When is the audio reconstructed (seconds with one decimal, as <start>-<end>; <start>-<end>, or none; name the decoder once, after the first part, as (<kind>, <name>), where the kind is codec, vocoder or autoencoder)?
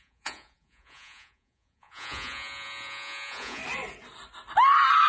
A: 0.0-3.6 (vocoder, Vocos)